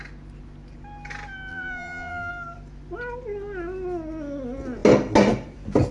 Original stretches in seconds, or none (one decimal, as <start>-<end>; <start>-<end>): 0.0-1.5; 2.3-5.9